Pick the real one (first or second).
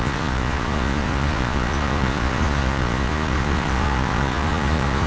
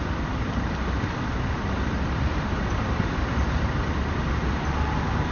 second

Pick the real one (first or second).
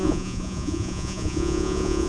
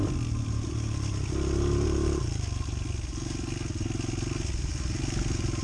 second